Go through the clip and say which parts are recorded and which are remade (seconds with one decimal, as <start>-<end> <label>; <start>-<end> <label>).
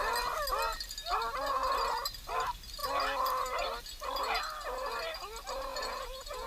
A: 0.0-5.7 recorded; 5.7-6.5 remade